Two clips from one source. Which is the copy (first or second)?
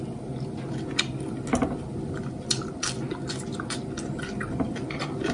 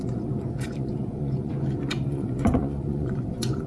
second